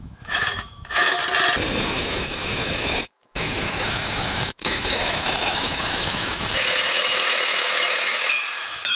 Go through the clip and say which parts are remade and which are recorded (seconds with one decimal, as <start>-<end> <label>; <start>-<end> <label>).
0.0-1.2 remade; 1.2-1.9 recorded; 1.9-9.0 remade